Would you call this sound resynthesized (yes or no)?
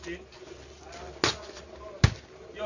no